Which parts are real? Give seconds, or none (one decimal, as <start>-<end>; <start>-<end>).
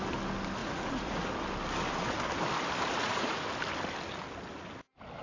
0.0-0.6; 1.3-2.9; 3.4-5.2